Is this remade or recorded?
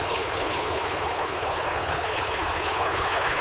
remade